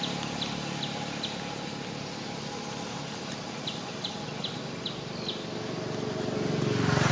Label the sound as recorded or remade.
recorded